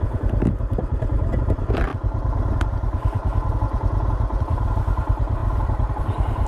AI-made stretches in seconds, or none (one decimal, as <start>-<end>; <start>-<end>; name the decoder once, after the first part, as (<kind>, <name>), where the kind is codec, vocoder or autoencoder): 0.0-1.9 (vocoder, BigVGAN v2); 4.4-6.5